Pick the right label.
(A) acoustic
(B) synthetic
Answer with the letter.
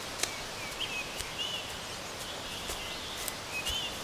A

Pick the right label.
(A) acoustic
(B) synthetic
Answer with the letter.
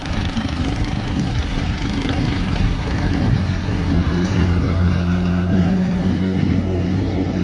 B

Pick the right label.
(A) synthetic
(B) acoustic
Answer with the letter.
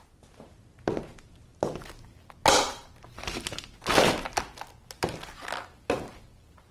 B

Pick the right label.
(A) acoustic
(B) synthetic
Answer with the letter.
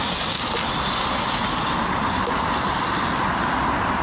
A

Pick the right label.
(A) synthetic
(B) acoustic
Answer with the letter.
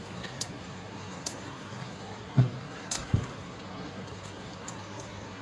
A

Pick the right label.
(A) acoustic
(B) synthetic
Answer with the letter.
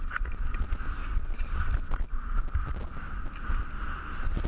A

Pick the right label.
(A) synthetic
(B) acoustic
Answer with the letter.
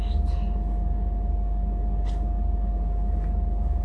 B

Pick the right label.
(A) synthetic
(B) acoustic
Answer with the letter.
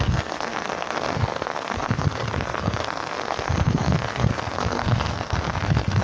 A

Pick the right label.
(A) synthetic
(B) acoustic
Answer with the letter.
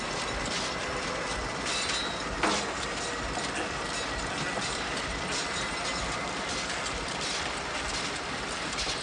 B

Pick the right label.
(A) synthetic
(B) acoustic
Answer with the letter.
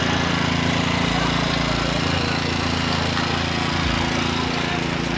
B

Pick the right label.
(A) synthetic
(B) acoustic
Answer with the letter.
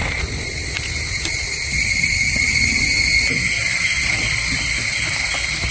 B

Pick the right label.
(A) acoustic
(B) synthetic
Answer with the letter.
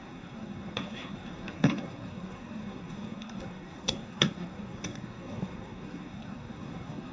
B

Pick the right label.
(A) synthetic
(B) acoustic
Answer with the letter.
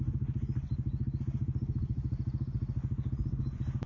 B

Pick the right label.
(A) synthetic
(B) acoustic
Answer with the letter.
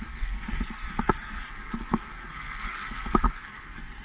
A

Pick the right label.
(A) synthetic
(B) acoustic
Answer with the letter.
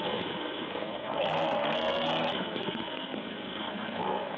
A